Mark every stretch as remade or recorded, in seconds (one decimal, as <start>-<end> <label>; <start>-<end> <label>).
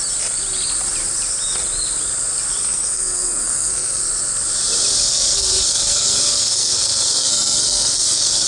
0.0-2.6 recorded; 2.6-4.0 remade; 4.0-5.1 recorded; 5.1-8.5 remade